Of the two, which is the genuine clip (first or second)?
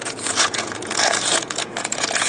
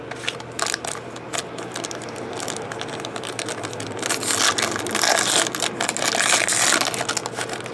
second